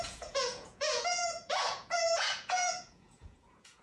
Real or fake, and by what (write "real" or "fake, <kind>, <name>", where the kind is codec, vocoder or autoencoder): fake, vocoder, Vocos